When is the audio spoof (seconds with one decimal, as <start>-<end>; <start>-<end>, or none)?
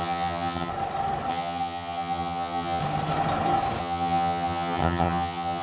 0.0-0.7; 1.3-2.8; 3.8-5.6